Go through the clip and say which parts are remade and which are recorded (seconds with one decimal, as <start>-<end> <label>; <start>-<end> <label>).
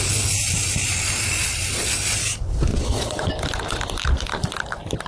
0.0-2.7 recorded; 2.7-3.3 remade; 3.3-5.1 recorded